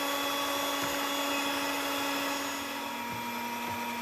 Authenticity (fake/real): real